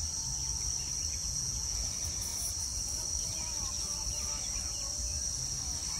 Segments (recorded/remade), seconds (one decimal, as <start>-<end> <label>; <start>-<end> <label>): 0.0-1.2 recorded; 1.2-1.9 remade; 1.9-6.0 recorded